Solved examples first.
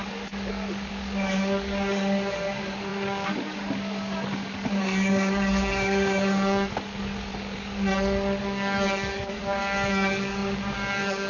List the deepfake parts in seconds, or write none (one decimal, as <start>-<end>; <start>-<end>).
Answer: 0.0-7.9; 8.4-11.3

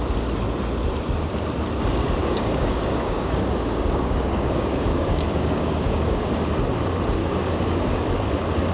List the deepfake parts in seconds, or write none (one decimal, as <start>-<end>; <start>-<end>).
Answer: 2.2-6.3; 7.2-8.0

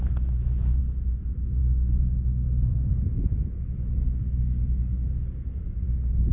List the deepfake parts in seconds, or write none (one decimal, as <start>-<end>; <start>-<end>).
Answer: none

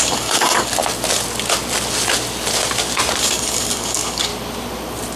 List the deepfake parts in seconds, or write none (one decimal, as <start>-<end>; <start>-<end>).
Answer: 0.0-0.7; 3.2-4.3

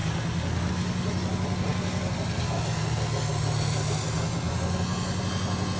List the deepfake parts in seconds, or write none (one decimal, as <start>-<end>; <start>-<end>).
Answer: none